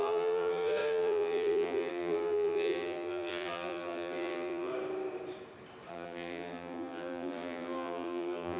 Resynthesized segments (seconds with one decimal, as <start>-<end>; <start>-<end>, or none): 0.0-4.7; 5.9-8.6